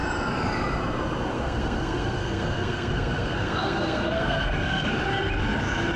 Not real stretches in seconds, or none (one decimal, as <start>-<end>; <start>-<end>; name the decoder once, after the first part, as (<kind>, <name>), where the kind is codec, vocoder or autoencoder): 1.3-4.9 (codec, SNAC)